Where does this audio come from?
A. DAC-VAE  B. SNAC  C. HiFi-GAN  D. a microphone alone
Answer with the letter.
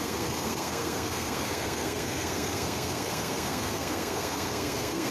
B